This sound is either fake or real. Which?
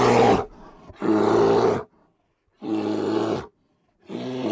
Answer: real